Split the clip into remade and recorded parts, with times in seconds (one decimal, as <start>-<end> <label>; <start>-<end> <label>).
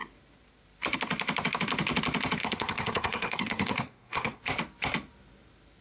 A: 0.0-2.4 recorded; 2.4-4.4 remade; 4.4-5.8 recorded